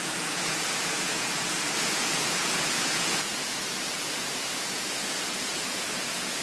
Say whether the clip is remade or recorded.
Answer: remade